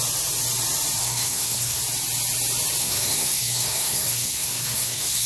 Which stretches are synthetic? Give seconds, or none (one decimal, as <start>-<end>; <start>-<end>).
1.0-1.8; 2.8-5.3

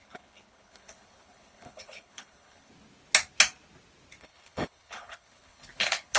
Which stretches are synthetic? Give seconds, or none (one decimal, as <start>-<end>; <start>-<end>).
0.0-2.7; 4.2-6.2

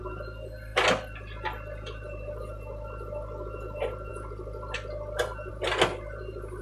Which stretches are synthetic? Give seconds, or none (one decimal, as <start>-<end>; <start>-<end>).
none

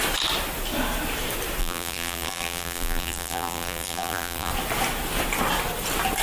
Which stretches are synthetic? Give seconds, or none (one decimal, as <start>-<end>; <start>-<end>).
1.6-4.5

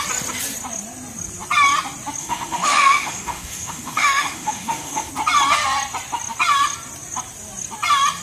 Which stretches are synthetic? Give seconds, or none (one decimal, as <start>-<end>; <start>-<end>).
2.2-5.1

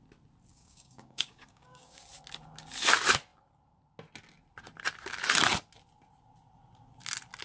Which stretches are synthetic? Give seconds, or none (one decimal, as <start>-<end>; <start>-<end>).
0.5-2.0

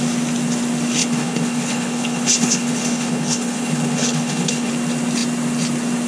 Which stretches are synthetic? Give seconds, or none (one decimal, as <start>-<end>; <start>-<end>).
1.0-4.7

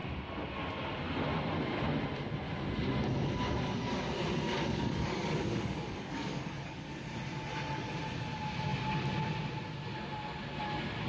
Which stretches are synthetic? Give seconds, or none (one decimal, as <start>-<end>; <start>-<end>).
4.7-6.9